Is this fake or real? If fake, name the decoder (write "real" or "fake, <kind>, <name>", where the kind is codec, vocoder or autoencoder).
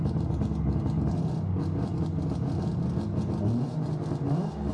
real